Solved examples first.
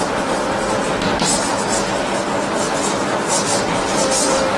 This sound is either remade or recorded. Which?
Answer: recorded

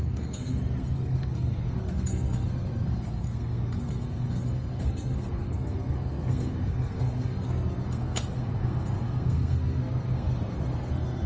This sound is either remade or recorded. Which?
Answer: remade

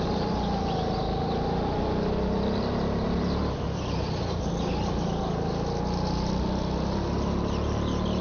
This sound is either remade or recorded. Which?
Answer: recorded